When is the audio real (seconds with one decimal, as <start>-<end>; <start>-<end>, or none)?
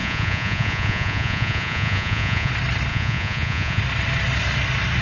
2.5-2.9; 3.8-5.0